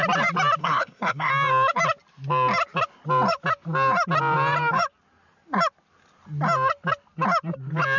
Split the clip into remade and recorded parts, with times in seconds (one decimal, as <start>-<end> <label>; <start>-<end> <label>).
0.0-0.6 recorded; 0.6-1.3 remade; 1.3-8.0 recorded